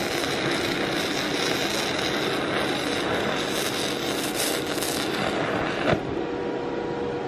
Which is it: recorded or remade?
recorded